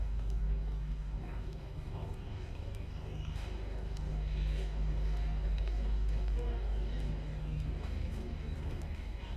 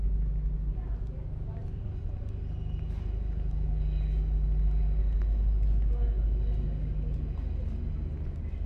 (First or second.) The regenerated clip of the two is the first